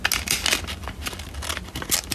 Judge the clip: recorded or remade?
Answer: recorded